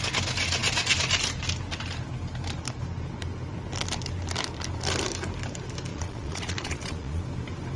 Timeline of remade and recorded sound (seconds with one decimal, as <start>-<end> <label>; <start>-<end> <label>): 0.0-5.9 recorded; 5.9-7.2 remade; 7.2-7.8 recorded